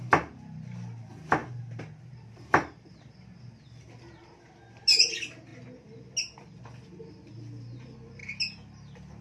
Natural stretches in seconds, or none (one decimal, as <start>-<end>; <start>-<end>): 0.0-9.2